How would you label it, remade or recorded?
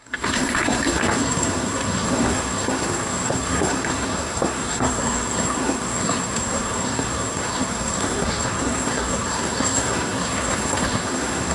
remade